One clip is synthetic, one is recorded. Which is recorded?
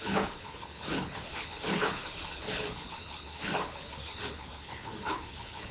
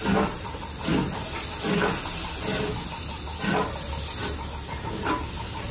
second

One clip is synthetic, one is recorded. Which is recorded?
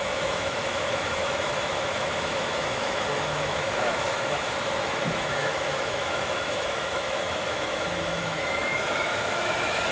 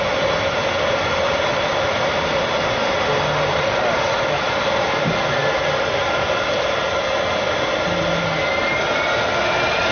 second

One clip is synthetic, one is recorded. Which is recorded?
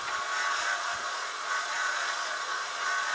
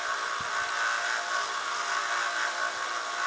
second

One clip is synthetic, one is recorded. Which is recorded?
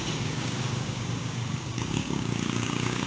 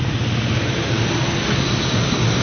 second